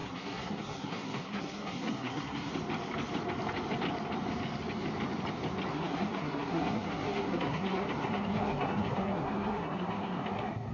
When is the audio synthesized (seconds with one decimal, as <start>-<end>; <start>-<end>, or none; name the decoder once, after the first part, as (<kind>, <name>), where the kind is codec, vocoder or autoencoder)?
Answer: 0.0-2.5 (codec, SNAC); 5.7-10.7